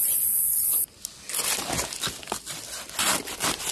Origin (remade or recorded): recorded